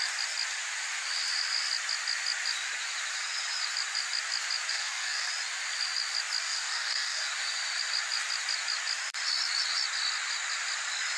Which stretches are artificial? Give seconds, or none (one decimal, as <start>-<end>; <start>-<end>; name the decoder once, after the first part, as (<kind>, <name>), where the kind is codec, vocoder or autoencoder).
4.7-5.3 (codec, DAC); 6.4-7.3